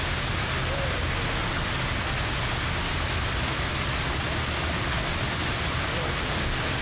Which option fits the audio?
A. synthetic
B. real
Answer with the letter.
B